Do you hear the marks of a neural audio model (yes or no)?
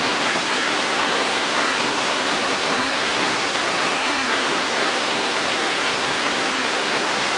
yes